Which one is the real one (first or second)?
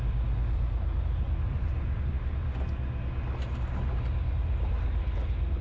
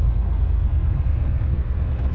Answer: first